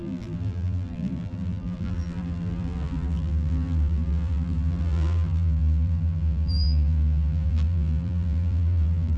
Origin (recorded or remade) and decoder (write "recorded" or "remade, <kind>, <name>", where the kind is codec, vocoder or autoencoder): remade, vocoder, BigVGAN v2